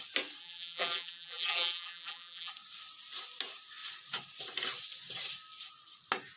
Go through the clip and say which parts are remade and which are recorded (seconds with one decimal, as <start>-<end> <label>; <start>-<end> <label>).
0.0-0.4 recorded; 0.4-2.5 remade; 2.5-6.4 recorded